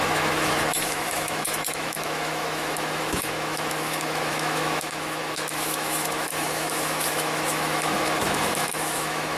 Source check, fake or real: fake